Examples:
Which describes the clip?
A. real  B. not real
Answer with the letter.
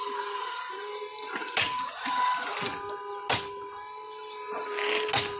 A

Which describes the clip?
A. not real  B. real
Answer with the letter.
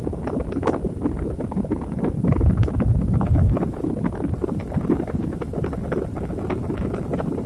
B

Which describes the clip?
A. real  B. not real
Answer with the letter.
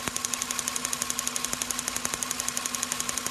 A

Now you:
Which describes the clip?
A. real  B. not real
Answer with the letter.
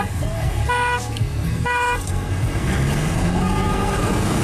B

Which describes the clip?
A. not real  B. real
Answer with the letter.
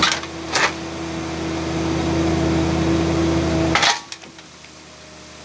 B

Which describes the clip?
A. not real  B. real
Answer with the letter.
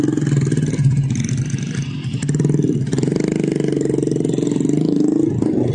B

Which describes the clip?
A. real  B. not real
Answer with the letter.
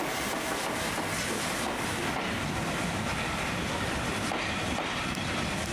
A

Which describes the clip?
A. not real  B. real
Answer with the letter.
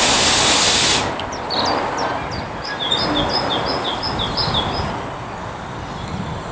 B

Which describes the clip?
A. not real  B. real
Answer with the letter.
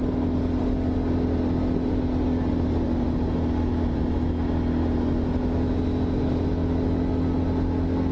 B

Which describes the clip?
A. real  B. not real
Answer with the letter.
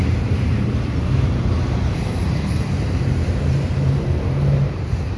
B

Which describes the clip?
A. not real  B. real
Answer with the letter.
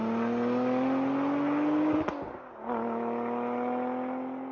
B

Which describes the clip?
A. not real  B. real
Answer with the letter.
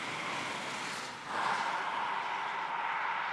B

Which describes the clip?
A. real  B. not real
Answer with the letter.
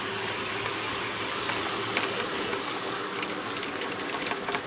B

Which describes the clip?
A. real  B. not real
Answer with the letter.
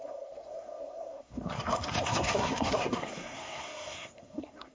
B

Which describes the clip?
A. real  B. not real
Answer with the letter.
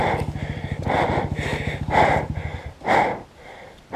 A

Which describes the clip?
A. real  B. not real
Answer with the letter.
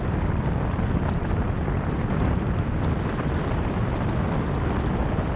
A